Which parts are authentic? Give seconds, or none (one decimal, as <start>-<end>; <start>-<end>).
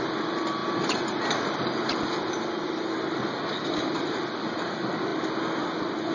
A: 0.0-6.1